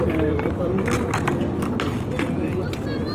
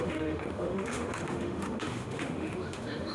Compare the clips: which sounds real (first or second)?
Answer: first